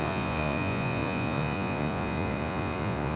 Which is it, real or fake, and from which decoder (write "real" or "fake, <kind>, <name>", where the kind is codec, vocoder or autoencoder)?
fake, vocoder, Vocos